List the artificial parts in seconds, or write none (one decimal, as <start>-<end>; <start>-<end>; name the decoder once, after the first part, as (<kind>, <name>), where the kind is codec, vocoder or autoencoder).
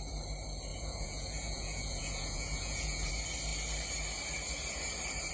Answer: 0.7-3.1 (vocoder, Vocos)